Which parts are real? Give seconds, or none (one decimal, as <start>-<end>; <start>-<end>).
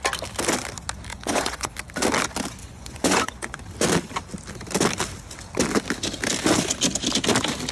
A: 0.0-1.1; 1.7-2.6; 3.6-7.7